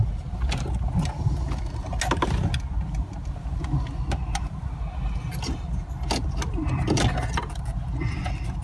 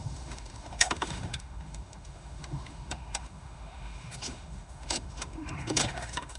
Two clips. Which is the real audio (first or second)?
first